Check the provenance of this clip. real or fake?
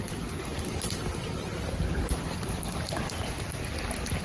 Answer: real